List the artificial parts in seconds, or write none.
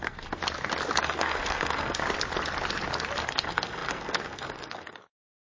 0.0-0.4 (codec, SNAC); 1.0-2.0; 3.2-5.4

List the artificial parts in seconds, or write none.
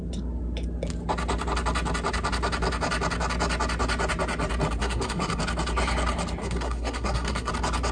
4.8-5.4 (codec, SNAC); 6.4-7.5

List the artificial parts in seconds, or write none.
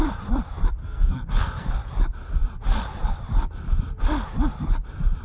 0.8-1.7 (codec, SNAC)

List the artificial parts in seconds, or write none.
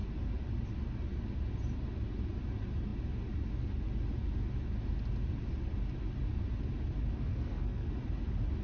7.3-7.9 (codec, SNAC)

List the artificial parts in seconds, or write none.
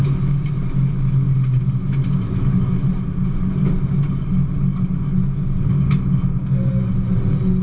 6.4-6.9 (codec, SNAC)